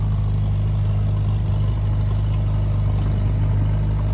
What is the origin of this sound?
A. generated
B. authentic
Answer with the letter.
B